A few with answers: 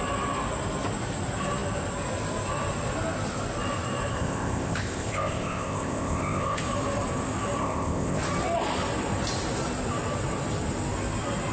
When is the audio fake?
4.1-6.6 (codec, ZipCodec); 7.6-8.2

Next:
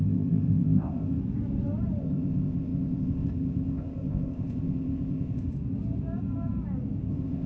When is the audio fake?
0.0-1.2 (codec, ZipCodec); 2.0-5.5; 7.1-7.5

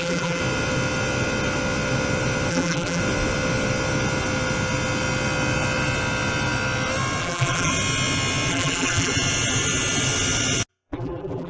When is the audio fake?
0.0-0.4 (vocoder, BigVGAN v2); 2.5-3.0; 7.2-7.7; 8.5-9.1; 10.7-11.5

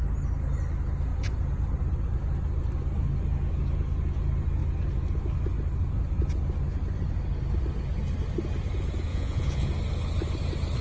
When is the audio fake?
9.1-9.7 (vocoder, Vocos)

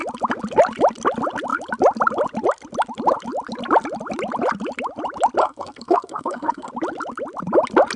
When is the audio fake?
5.4-6.7 (codec, SNAC)

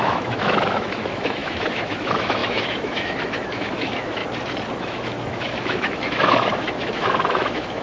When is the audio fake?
0.0-4.2 (autoencoder, DAC-VAE); 4.8-7.8

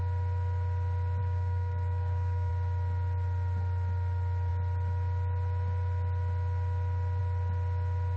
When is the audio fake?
1.2-2.5 (codec, DAC)

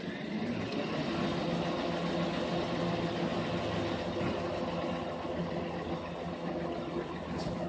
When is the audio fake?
none